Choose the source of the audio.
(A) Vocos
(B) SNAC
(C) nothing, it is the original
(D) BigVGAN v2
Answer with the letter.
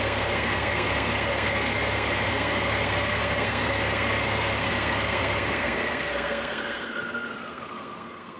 B